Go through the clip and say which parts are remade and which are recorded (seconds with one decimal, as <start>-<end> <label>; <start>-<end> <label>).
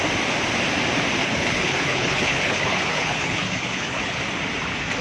0.0-1.2 recorded; 1.2-4.2 remade; 4.2-5.0 recorded